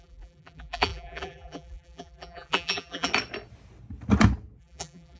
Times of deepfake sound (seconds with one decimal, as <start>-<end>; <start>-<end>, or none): 0.0-3.1; 4.6-5.2